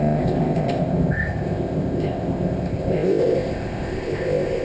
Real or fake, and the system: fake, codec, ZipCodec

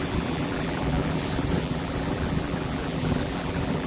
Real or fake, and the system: fake, vocoder, BigVGAN v2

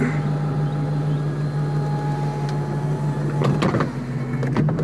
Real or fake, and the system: real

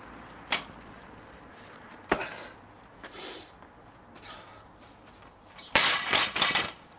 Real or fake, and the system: fake, vocoder, BigVGAN v2